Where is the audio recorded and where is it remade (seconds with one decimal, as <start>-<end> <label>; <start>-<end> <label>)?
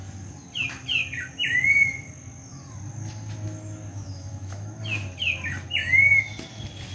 0.0-3.9 recorded; 3.9-4.8 remade; 4.8-6.9 recorded